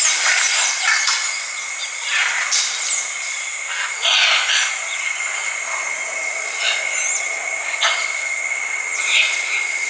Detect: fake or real real